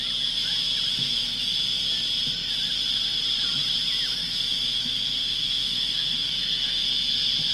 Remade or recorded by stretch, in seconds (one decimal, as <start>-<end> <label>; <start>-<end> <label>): 0.0-1.0 recorded; 1.0-1.6 remade; 1.6-4.2 recorded; 4.2-6.9 remade; 6.9-7.5 recorded